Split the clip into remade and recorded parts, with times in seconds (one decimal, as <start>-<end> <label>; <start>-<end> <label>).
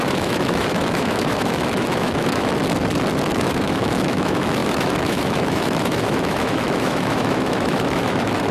0.0-2.5 remade; 2.5-3.3 recorded; 3.3-8.5 remade